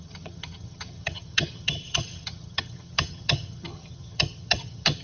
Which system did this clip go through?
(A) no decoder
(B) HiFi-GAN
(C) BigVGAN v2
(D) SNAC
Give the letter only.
B